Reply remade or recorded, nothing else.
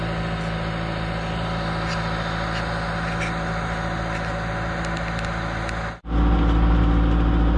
recorded